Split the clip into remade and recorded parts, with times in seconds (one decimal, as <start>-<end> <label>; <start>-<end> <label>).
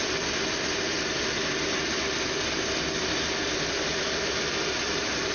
0.0-5.3 recorded